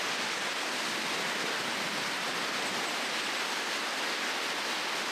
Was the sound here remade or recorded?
recorded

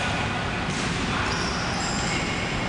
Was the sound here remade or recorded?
recorded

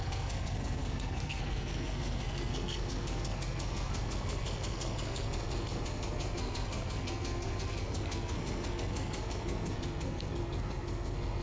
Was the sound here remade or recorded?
remade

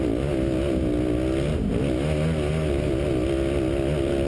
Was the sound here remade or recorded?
recorded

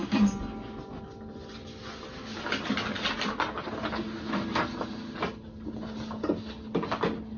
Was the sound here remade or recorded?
recorded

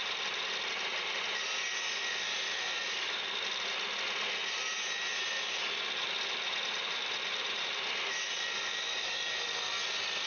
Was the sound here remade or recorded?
recorded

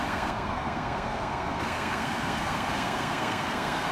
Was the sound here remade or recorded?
remade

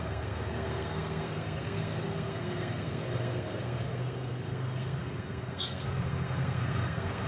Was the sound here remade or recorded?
remade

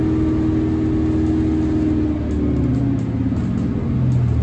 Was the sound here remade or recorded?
recorded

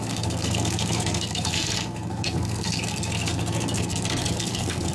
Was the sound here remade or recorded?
remade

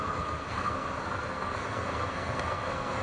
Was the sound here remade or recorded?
remade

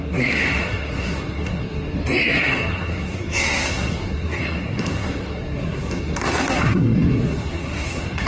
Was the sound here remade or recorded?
remade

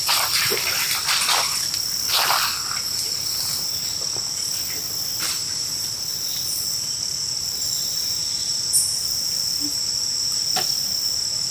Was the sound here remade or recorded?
recorded